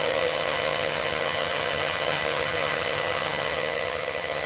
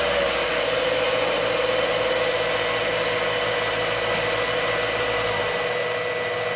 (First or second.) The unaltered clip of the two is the second